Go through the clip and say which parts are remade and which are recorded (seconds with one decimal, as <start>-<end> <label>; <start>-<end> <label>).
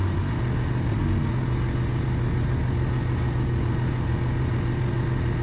0.0-5.4 recorded